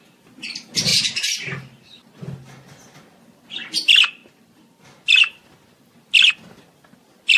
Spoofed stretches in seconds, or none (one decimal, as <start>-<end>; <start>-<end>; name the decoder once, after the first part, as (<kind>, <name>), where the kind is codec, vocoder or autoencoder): 0.0-0.9 (vocoder, BigVGAN v2); 3.0-7.4